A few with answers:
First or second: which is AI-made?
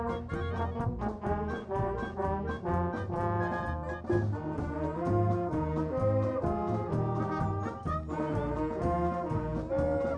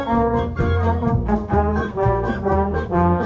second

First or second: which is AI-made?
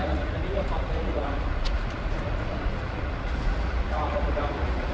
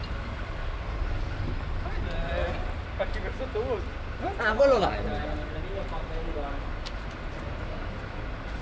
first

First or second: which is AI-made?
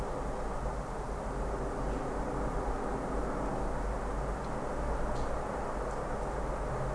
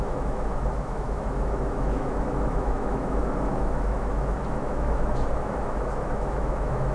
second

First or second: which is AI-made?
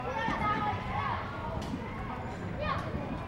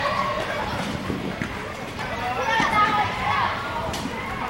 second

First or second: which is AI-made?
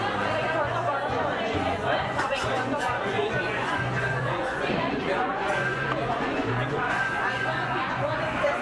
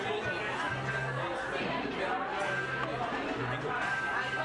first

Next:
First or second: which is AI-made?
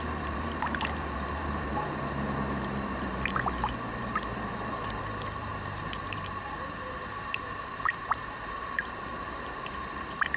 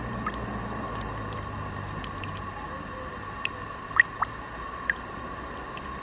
first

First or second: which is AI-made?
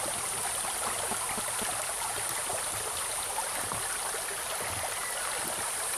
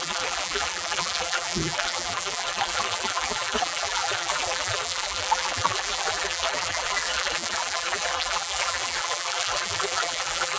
second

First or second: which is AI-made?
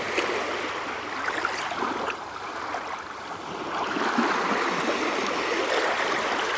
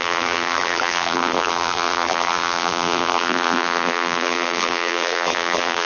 second